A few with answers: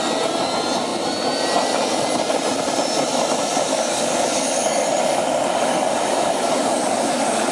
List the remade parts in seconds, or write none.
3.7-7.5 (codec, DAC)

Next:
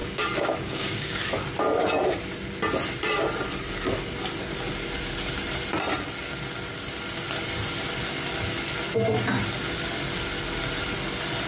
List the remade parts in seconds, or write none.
0.0-1.2 (codec, DAC)

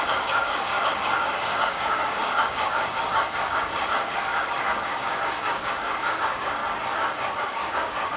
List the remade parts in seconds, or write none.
0.0-6.6 (codec, DAC); 7.4-8.2